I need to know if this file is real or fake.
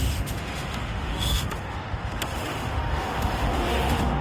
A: fake